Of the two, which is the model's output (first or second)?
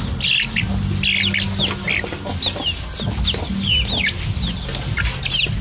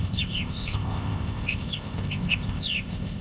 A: second